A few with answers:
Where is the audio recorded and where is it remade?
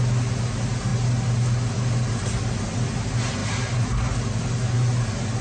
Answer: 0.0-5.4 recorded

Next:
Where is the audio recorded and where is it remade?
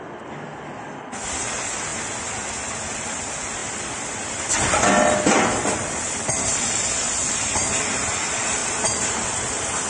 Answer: 0.0-9.9 recorded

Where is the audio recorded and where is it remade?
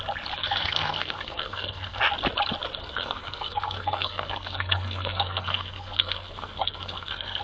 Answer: 0.0-0.4 recorded; 0.4-2.0 remade; 2.0-2.8 recorded; 2.8-7.4 remade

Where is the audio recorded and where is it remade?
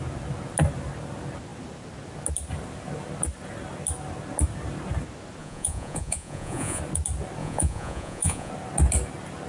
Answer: 0.0-5.4 recorded; 5.4-6.8 remade; 6.8-7.4 recorded; 7.4-8.5 remade; 8.5-9.5 recorded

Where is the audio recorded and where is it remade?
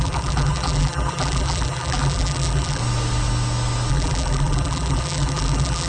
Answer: 0.0-2.8 remade; 2.8-3.9 recorded; 3.9-5.9 remade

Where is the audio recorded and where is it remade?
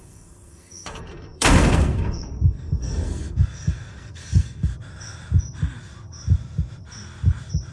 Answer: 0.0-4.7 remade; 4.7-7.7 recorded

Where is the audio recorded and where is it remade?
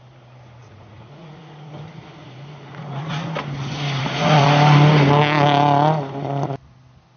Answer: 0.0-0.6 recorded; 0.6-3.3 remade; 3.3-4.0 recorded; 4.0-4.5 remade; 4.5-7.2 recorded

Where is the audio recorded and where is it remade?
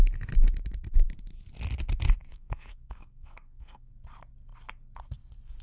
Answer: 0.0-2.3 recorded; 2.3-3.9 remade; 3.9-5.6 recorded